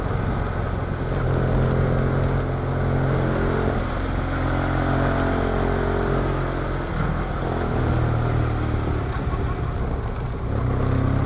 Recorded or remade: recorded